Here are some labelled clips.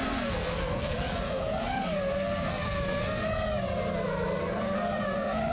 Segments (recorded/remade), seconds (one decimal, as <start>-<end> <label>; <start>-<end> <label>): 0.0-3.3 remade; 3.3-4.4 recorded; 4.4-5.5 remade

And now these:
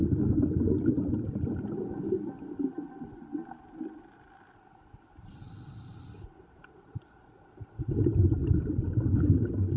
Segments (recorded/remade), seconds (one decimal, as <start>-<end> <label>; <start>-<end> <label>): 0.0-9.8 recorded

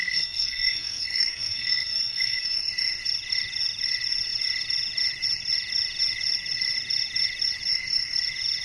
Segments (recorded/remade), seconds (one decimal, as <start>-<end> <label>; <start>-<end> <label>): 0.0-2.6 remade; 2.6-8.6 recorded

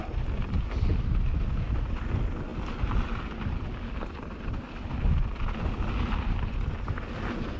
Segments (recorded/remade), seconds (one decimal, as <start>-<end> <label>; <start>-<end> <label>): 0.0-7.6 recorded

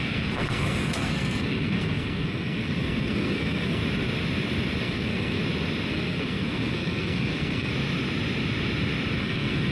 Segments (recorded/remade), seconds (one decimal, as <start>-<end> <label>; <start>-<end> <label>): 0.0-3.8 remade; 3.8-4.8 recorded; 4.8-5.4 remade; 5.4-5.9 recorded; 5.9-7.7 remade; 7.7-9.2 recorded; 9.2-9.7 remade